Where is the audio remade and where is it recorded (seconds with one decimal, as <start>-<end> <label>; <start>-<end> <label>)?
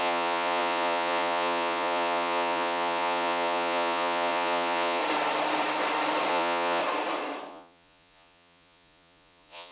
0.0-5.0 remade; 5.0-6.3 recorded; 6.3-6.8 remade; 6.8-7.5 recorded; 7.5-9.7 remade